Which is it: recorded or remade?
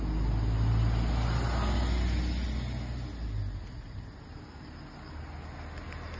recorded